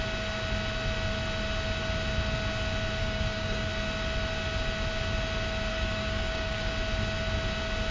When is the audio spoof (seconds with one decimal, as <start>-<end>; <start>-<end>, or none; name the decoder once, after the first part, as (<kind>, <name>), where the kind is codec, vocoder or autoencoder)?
3.0-3.7 (codec, DAC); 5.7-6.7